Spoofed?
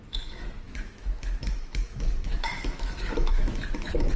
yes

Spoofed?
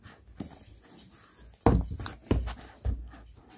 no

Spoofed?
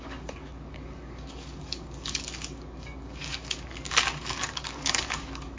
yes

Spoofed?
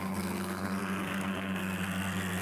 yes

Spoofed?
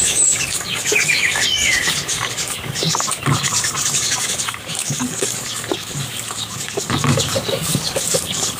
yes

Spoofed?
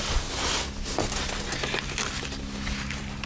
no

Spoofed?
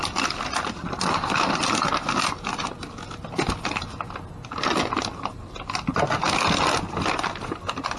no